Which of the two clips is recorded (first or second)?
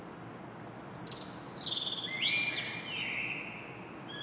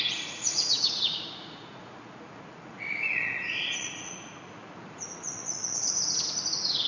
first